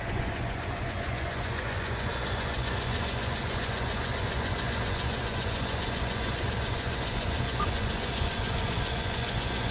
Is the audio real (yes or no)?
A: no